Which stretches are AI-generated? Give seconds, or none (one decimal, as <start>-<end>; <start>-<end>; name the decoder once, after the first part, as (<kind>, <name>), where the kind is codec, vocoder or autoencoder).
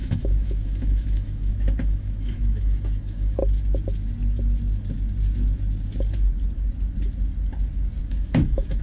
0.0-3.4 (autoencoder, DAC-VAE); 8.0-8.8